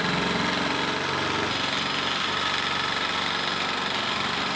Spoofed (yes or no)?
no